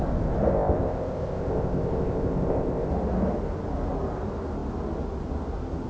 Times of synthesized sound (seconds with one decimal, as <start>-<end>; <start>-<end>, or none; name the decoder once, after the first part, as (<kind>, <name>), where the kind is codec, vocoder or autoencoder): 0.5-2.9 (codec, ZipCodec)